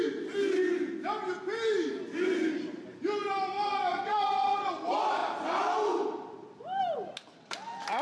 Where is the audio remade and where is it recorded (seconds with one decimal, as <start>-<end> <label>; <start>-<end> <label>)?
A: 0.0-3.9 recorded; 3.9-4.7 remade; 4.7-8.0 recorded